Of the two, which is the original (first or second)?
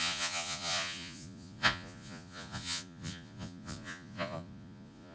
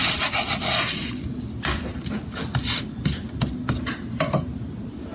second